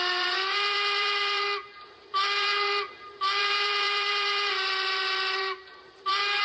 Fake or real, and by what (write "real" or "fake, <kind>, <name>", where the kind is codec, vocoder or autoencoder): fake, vocoder, BigVGAN v2